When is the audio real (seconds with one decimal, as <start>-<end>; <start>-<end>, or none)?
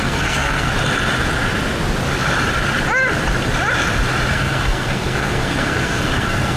0.7-4.3